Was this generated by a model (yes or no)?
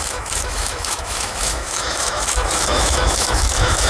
yes